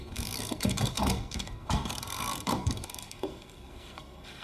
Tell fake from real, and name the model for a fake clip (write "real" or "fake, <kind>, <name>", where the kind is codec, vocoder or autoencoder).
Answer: fake, codec, SNAC